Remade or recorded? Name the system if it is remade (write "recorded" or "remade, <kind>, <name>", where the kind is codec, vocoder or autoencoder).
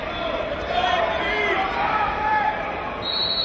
remade, vocoder, BigVGAN v2